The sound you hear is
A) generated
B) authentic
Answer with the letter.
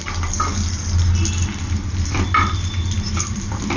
B